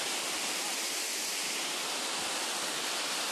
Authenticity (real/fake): fake